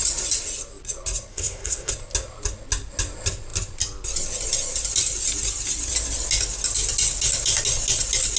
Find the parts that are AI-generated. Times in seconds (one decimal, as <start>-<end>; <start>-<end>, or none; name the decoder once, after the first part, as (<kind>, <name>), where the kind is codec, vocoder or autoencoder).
1.3-1.9 (codec, SNAC)